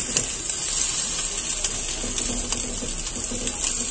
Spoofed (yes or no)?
no